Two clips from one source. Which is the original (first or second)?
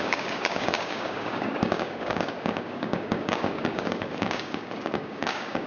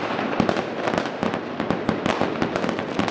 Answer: second